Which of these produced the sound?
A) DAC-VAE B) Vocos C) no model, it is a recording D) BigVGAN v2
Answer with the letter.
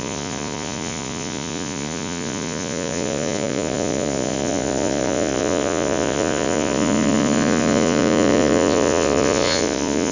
B